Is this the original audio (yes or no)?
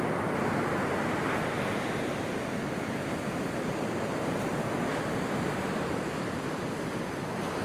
yes